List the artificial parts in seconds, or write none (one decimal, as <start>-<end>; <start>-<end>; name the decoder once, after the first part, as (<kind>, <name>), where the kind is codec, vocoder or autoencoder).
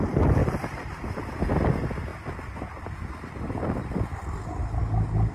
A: none